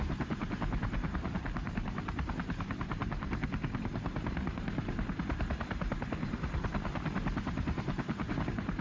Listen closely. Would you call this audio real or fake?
fake